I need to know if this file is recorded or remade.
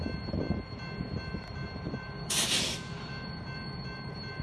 remade